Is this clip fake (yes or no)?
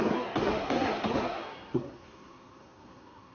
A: yes